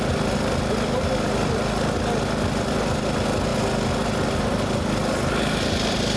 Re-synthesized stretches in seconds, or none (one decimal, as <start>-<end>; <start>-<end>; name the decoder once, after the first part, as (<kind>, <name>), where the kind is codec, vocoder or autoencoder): none